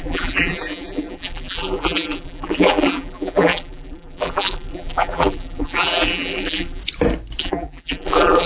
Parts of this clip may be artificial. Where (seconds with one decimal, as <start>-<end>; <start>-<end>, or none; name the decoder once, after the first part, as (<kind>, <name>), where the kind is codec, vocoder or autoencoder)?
0.0-6.8 (vocoder, BigVGAN v2); 7.4-8.5